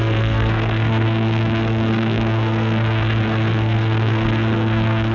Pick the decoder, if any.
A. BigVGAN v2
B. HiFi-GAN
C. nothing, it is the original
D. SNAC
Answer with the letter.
D